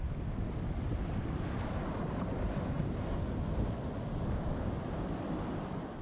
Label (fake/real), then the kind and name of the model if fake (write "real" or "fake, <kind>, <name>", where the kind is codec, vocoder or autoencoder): real